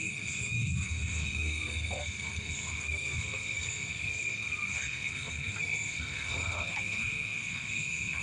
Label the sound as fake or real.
fake